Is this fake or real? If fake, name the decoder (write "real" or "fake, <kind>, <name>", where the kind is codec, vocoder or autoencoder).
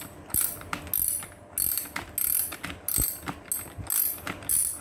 real